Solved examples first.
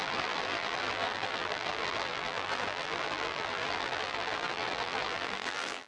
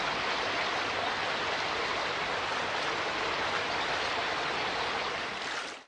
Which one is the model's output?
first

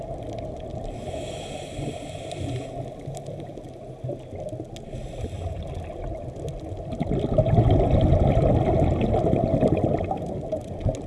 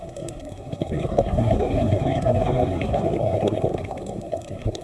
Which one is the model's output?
second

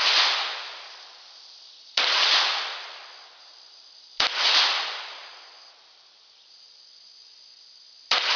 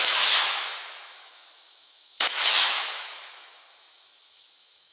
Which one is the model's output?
second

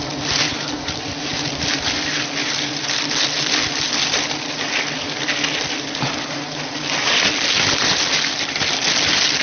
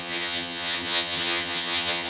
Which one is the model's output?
second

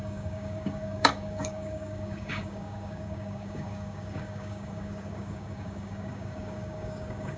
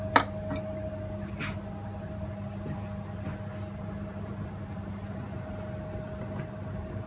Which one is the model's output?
first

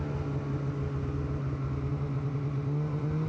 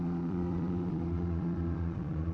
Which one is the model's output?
second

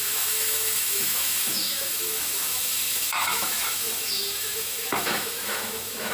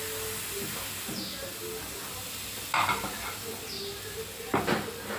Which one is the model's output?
first